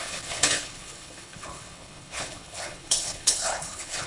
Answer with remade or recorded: remade